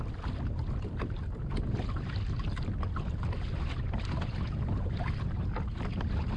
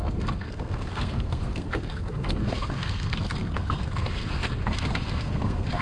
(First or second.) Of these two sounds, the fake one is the second